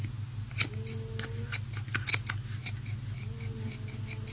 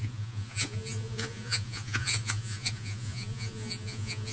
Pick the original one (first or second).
first